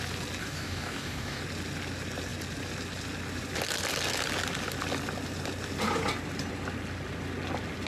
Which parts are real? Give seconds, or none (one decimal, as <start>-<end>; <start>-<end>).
0.0-0.4; 1.4-7.9